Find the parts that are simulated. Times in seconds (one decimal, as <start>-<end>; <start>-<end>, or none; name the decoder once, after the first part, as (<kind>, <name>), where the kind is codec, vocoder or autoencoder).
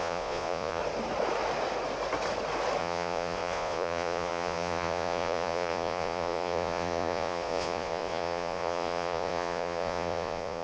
0.0-0.8 (vocoder, Vocos); 2.8-10.6